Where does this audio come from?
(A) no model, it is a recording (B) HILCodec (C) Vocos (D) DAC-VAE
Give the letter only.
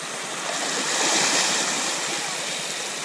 A